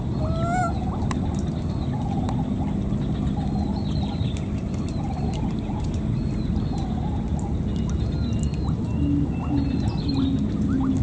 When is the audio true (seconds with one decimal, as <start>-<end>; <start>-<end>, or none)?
0.0-11.0